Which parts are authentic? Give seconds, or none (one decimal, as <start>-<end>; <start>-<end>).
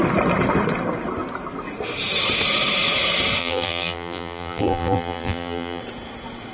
0.0-3.4; 5.8-6.5